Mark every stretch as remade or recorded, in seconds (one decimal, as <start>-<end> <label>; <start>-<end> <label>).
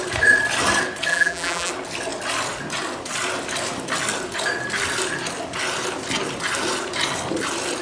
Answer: 0.0-1.1 recorded; 1.1-1.7 remade; 1.7-7.8 recorded